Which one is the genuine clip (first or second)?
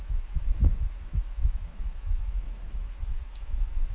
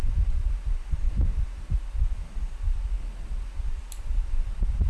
second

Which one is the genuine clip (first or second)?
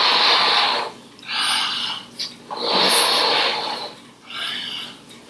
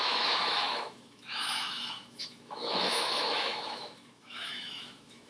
first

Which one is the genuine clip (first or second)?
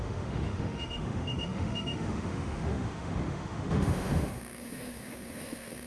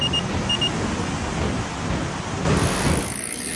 second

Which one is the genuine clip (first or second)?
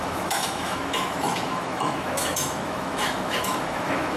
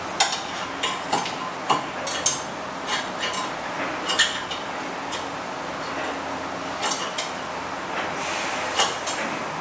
second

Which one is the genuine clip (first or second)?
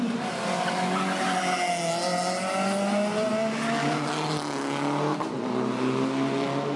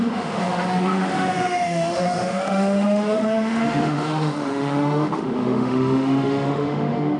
first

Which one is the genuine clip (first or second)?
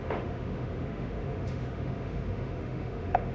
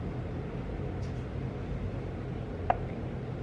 second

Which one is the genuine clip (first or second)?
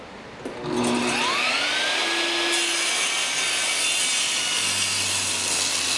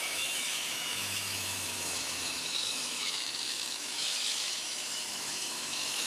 first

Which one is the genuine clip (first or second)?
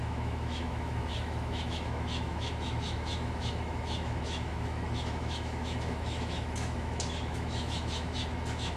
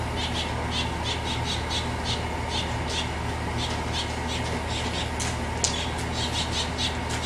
second